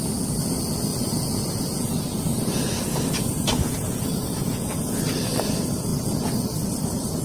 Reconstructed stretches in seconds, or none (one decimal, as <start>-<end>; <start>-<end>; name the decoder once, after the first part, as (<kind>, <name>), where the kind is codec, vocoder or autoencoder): 0.9-5.0 (vocoder, Vocos)